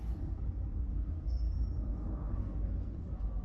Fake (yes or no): yes